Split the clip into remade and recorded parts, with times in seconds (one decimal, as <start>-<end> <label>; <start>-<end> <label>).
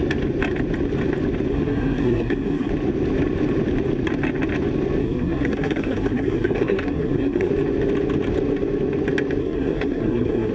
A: 0.0-1.5 recorded; 1.5-2.7 remade; 2.7-5.0 recorded; 5.0-7.5 remade; 7.5-9.4 recorded; 9.4-10.5 remade